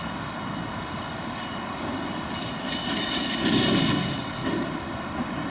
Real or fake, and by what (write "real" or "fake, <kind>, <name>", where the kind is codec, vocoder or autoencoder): real